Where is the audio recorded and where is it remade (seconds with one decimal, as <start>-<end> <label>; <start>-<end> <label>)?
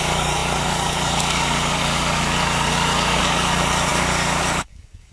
0.0-5.1 remade